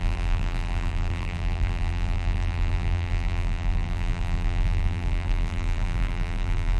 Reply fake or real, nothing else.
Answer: fake